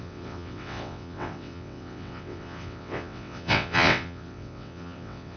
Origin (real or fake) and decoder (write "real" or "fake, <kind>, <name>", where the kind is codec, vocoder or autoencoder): fake, vocoder, WaveNeXt